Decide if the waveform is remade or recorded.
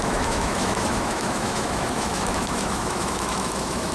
remade